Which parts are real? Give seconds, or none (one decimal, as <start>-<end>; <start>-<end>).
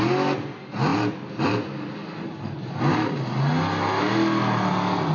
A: 0.0-5.1